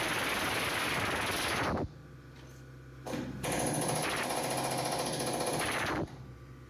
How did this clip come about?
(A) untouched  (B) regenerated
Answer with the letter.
A